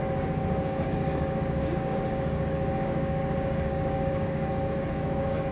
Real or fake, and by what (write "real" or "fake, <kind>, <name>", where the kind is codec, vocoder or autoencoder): fake, codec, DAC